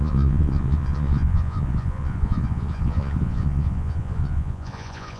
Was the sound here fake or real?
fake